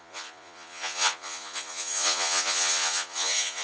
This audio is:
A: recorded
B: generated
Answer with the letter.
B